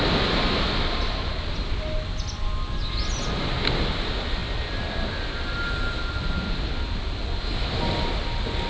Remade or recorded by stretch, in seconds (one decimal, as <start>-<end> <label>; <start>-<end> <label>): 0.0-8.7 recorded